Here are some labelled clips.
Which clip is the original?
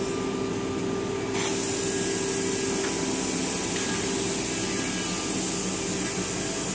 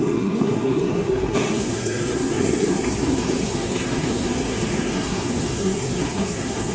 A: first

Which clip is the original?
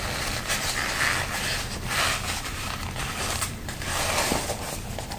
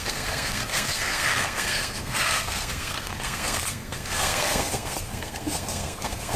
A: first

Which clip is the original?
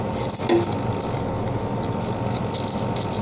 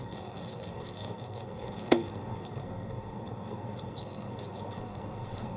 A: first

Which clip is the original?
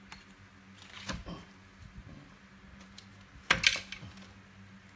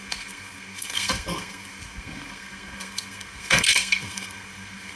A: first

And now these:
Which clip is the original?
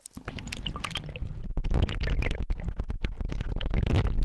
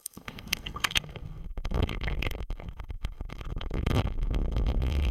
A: first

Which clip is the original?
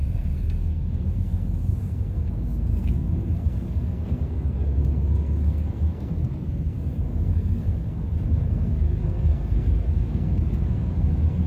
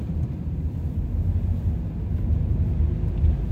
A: second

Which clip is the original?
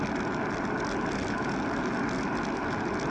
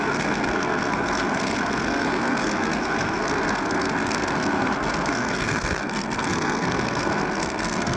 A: first